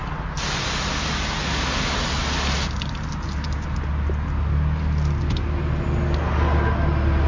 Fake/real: real